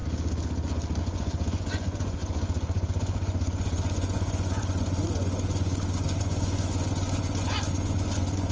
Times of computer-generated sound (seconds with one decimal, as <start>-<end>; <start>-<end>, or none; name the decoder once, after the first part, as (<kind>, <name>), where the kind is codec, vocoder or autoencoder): 1.0-8.5 (vocoder, Vocos)